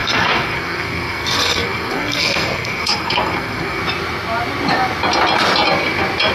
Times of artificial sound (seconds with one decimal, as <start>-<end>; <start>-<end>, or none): 0.0-3.8